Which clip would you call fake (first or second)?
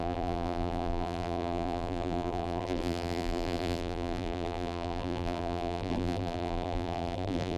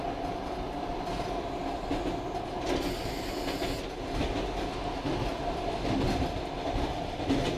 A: first